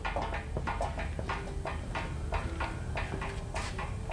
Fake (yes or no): no